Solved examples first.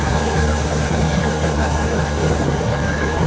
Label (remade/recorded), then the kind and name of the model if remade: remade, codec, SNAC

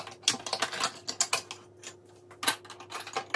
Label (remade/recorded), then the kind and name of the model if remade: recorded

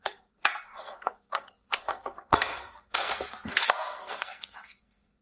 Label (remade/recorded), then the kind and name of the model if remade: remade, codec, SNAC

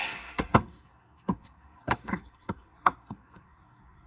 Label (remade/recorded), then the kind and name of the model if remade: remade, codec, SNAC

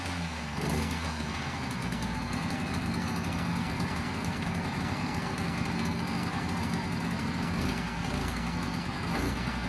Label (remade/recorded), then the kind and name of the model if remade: remade, codec, SNAC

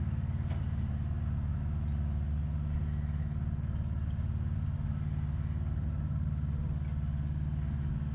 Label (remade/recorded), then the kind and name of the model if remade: recorded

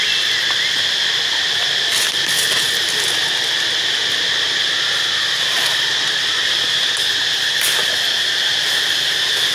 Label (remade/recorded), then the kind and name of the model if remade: recorded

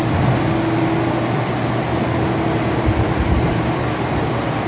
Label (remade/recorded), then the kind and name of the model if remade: recorded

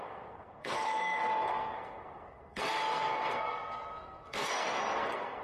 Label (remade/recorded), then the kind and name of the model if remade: remade, codec, SNAC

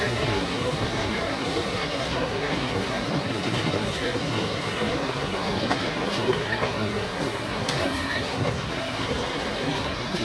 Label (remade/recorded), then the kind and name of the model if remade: remade, codec, SNAC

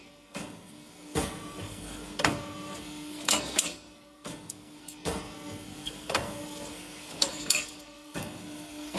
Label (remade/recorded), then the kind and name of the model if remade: remade, codec, SNAC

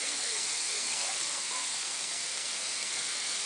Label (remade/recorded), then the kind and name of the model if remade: remade, codec, SNAC